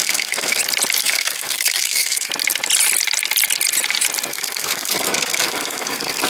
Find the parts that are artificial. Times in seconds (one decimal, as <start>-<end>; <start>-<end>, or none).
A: 0.0-0.6; 1.0-2.3; 4.3-6.3